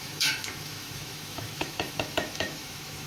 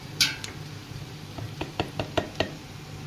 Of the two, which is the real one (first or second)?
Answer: second